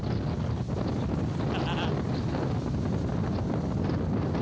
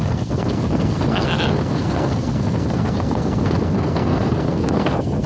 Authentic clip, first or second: first